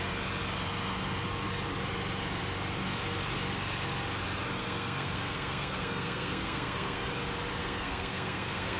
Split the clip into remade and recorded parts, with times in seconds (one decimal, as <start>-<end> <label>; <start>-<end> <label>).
0.0-4.6 recorded; 4.6-7.1 remade; 7.1-7.6 recorded; 7.6-8.8 remade